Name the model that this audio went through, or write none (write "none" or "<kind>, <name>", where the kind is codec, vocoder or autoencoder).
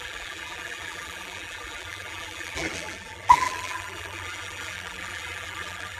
vocoder, BigVGAN v2